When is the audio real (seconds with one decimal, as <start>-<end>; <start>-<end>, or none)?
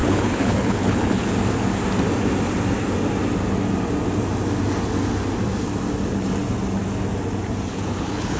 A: 1.3-7.7